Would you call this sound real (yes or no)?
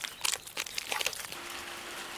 yes